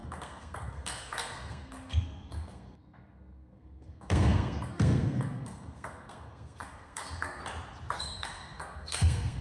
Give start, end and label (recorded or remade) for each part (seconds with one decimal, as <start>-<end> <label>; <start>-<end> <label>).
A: 0.0-7.4 remade; 7.4-8.0 recorded; 8.0-9.4 remade